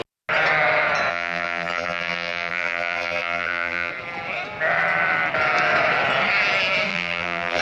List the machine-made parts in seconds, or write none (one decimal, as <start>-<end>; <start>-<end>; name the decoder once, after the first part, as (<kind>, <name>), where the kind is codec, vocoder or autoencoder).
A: 1.1-3.9 (vocoder, BigVGAN v2); 6.9-7.6